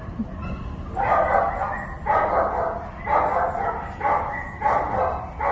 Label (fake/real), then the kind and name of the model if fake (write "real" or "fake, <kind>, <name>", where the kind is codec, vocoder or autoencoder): real